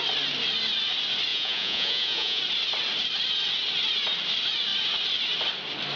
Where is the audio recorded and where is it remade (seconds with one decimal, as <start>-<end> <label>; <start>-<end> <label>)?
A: 0.0-1.3 recorded; 1.3-2.4 remade; 2.4-6.0 recorded